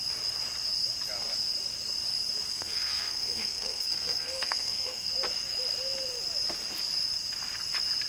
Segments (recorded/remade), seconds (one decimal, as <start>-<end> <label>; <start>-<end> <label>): 0.0-2.5 recorded; 2.5-5.1 remade; 5.1-8.1 recorded